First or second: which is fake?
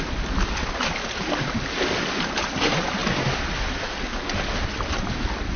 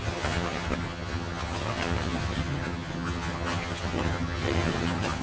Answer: second